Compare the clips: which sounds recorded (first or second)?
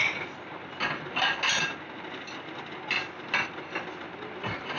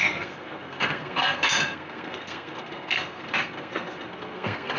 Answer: first